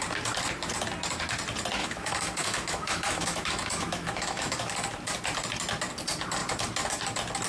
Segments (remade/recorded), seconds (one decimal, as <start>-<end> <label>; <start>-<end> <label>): 0.0-1.8 recorded; 1.8-4.7 remade; 4.7-7.5 recorded